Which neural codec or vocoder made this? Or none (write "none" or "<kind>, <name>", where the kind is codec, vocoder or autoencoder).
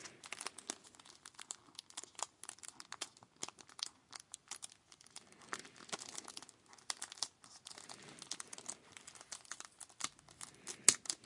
none